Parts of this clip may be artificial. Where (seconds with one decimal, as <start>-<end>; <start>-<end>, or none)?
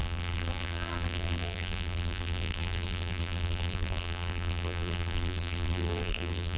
0.0-6.6